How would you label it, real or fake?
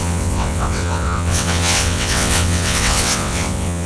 fake